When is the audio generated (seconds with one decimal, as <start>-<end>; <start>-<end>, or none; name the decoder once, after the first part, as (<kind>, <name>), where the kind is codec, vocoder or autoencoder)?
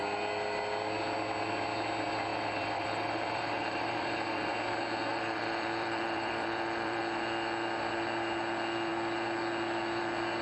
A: 2.3-4.5 (vocoder, BigVGAN v2); 5.1-7.0